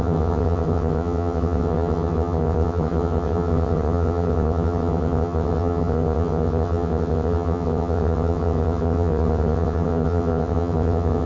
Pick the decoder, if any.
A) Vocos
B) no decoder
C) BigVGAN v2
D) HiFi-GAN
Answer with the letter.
D